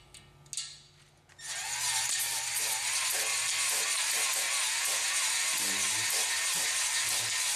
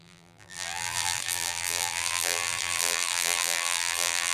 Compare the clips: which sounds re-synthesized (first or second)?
second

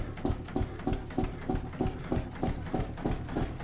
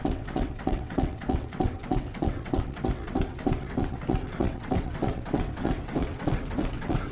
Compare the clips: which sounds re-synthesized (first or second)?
second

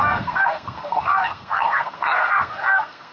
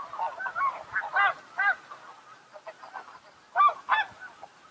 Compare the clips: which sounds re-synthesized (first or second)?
first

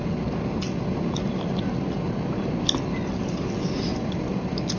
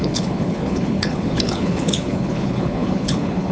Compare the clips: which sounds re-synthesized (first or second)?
second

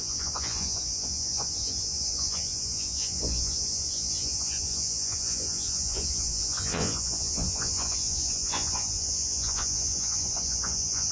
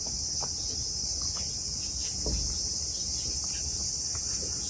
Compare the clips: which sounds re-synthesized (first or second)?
first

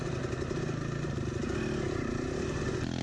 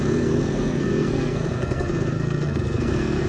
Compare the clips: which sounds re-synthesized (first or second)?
second